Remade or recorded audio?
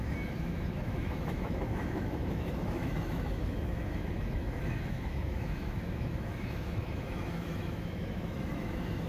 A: remade